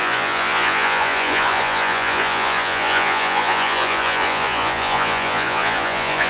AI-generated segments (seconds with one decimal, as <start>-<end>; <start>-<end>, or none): 0.0-6.3